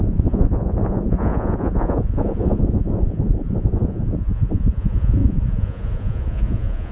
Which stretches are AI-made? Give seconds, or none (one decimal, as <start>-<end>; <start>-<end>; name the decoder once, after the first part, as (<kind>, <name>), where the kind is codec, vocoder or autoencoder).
0.0-6.9 (vocoder, Vocos)